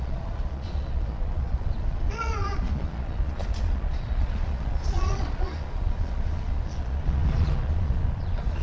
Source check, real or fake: fake